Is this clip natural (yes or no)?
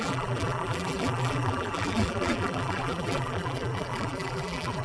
no